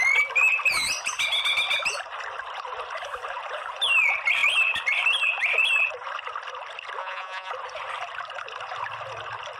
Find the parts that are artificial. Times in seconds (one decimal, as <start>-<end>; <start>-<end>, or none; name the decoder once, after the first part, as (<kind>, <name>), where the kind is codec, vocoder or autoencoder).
7.0-7.5 (vocoder, Vocos)